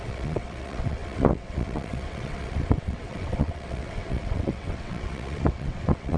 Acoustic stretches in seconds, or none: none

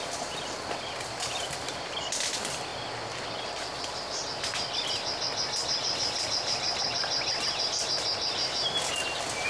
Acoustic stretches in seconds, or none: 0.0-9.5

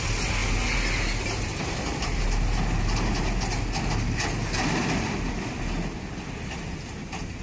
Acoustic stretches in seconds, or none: 0.0-4.4; 5.5-7.4

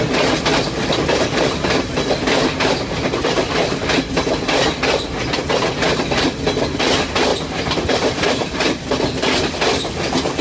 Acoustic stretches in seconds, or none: 0.0-7.3; 9.0-10.4

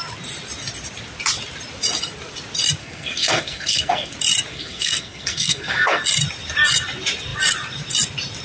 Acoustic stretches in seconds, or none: 0.0-2.8; 4.1-4.5; 6.0-8.4